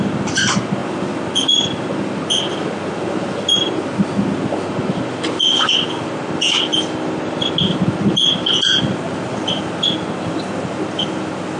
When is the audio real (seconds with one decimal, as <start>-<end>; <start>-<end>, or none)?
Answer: 0.0-11.6